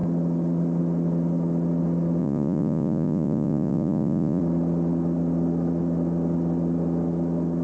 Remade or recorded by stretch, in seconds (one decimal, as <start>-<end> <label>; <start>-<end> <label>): 0.0-2.2 recorded; 2.2-4.4 remade; 4.4-7.6 recorded